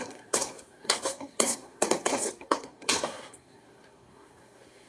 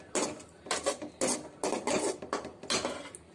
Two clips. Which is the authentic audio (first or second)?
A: second